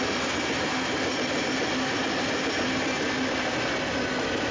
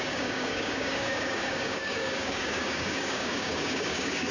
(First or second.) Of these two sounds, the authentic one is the first